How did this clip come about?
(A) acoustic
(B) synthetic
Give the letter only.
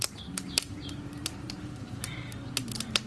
B